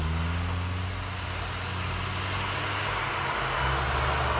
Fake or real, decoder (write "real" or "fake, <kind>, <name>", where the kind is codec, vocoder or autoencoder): real